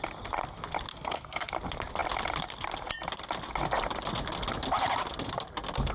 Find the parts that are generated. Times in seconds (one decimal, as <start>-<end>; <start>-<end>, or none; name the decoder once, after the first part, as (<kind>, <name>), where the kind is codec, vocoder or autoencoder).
0.9-1.5 (codec, SNAC)